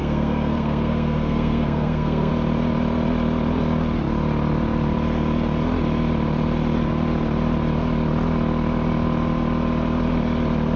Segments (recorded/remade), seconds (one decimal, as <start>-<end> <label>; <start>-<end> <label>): 0.0-2.3 remade; 2.3-10.8 recorded